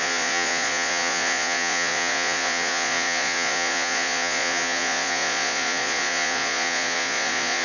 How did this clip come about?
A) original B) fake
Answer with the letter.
B